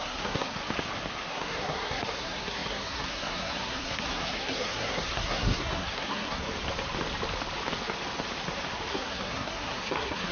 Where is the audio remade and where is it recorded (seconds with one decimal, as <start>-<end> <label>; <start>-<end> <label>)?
0.0-0.6 remade; 0.6-1.3 recorded; 1.3-6.4 remade; 6.4-8.9 recorded; 8.9-10.3 remade